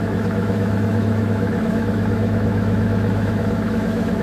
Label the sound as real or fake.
fake